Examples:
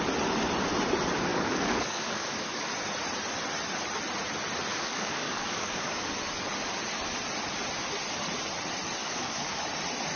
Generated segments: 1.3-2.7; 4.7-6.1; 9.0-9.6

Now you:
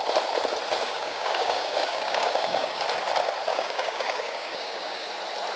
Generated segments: 0.8-2.8; 3.5-5.1